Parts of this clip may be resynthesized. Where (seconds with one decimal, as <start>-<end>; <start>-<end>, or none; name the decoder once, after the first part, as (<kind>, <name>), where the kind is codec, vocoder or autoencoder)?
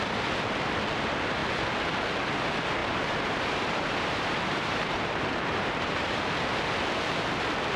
2.8-6.2 (vocoder, BigVGAN v2)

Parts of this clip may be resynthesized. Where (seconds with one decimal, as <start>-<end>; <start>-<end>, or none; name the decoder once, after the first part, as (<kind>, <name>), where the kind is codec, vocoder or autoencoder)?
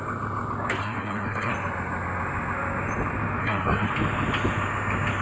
0.8-1.5 (codec, SNAC); 3.4-3.9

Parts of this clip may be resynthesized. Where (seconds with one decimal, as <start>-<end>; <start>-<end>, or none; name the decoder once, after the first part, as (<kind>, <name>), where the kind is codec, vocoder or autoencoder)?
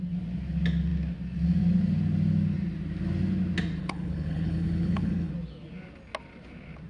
3.8-5.3 (codec, HILCodec)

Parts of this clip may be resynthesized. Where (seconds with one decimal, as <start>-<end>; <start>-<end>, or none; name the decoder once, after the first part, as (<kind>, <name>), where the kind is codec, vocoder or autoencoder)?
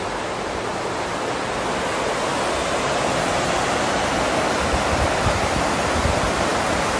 none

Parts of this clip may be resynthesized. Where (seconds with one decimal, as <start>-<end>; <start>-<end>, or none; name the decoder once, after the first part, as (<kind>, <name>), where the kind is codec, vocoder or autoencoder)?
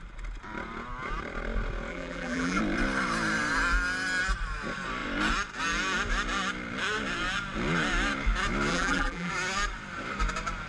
1.9-2.6 (vocoder, BigVGAN v2); 8.7-9.3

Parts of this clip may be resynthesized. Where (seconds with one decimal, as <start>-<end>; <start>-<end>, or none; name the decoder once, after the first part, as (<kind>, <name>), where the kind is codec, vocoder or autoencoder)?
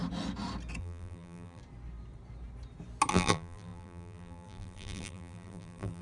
0.8-1.6 (vocoder, BigVGAN v2); 3.1-6.0